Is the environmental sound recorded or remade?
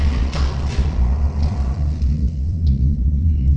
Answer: remade